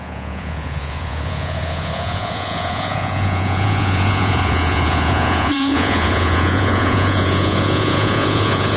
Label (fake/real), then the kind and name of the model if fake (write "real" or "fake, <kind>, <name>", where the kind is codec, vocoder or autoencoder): fake, vocoder, Vocos